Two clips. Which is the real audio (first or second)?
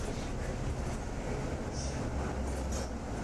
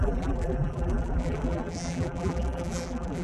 first